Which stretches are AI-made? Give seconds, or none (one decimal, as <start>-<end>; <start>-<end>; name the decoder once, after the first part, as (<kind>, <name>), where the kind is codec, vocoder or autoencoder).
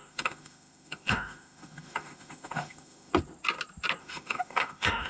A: 0.0-3.1 (autoencoder, DAC-VAE); 4.0-5.1